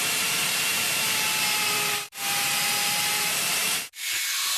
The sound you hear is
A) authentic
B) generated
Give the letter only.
B